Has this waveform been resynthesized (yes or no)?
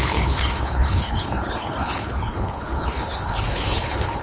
yes